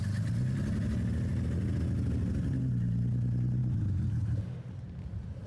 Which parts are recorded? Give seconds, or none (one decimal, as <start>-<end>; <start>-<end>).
0.0-5.5